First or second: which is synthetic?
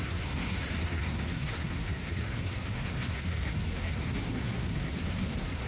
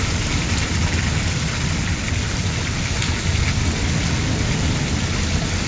first